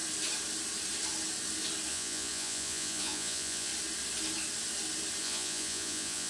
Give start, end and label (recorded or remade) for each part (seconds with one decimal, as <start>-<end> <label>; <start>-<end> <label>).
0.0-1.9 recorded; 1.9-3.7 remade; 3.7-5.2 recorded; 5.2-6.3 remade